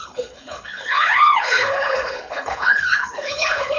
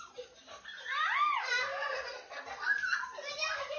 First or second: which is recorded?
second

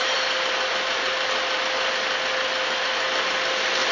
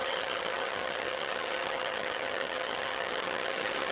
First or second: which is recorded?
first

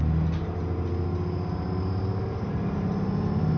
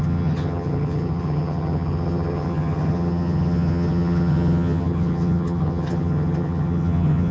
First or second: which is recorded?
first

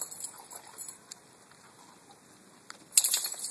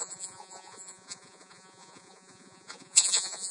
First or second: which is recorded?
first